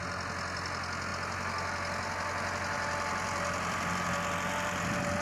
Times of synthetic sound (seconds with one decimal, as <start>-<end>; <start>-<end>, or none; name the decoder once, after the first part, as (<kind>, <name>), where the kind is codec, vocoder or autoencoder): none